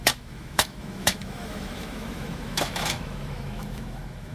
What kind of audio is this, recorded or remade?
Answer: remade